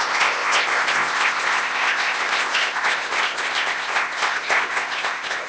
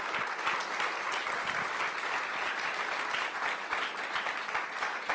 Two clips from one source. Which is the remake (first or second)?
first